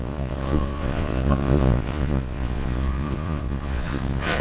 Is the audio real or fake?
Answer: fake